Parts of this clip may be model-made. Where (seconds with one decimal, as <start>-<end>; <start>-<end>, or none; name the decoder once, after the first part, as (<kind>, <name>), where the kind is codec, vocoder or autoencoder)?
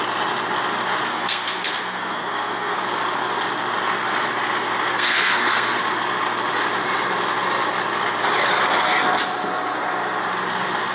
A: 1.1-2.8 (codec, SNAC); 4.9-5.8